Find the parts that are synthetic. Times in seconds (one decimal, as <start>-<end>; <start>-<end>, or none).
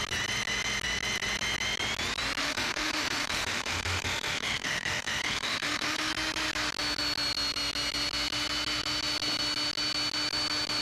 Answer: 2.4-6.1